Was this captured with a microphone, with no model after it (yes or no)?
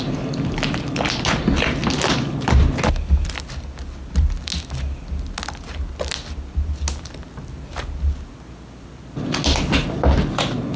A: yes